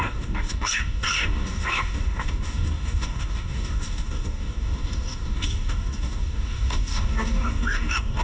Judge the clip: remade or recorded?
remade